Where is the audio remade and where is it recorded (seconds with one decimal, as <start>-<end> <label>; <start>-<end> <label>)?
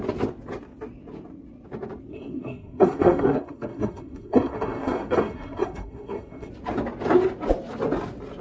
0.0-2.1 recorded; 2.1-6.5 remade; 6.5-8.4 recorded